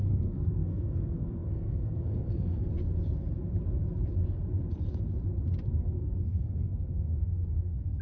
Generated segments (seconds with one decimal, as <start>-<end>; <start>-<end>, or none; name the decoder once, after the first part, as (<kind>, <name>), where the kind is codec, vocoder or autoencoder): 0.0-2.7 (codec, SNAC); 5.7-8.0